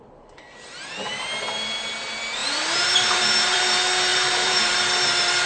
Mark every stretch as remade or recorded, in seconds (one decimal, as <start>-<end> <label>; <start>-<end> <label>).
0.0-2.4 recorded; 2.4-3.6 remade; 3.6-4.1 recorded; 4.1-4.7 remade; 4.7-5.5 recorded